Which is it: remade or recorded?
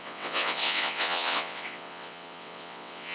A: remade